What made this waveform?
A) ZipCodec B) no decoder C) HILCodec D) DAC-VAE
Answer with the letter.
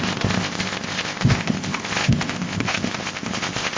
A